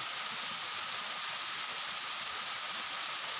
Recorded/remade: recorded